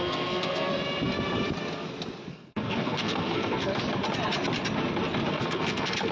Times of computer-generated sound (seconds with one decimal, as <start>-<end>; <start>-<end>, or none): 0.0-0.7; 2.3-3.7; 5.3-6.1